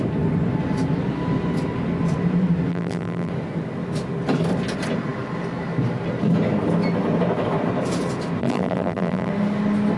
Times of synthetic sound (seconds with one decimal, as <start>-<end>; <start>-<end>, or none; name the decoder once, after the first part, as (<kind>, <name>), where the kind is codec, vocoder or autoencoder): 2.7-3.3 (vocoder, BigVGAN v2); 8.4-9.3